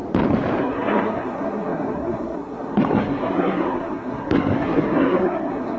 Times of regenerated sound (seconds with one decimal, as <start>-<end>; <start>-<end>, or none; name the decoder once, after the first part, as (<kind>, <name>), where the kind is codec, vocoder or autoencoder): 0.6-5.8 (codec, SNAC)